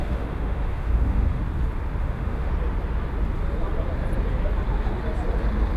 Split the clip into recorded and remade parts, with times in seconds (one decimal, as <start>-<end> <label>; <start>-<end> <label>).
0.0-1.4 remade; 1.4-2.0 recorded; 2.0-2.5 remade; 2.5-5.8 recorded